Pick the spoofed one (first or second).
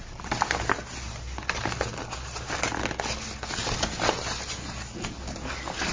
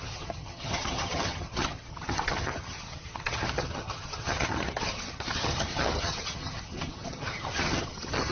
second